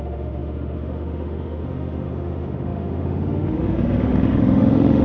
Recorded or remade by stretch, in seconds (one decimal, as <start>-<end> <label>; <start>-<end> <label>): 0.0-5.0 remade